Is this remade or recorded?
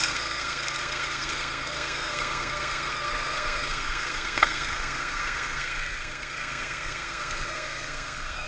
remade